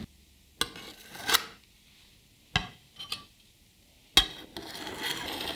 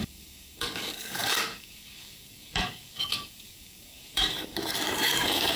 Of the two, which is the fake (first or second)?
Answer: second